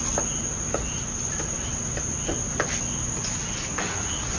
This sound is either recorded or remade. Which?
recorded